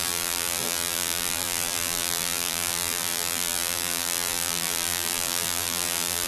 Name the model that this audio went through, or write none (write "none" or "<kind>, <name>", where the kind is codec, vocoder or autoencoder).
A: vocoder, BigVGAN v2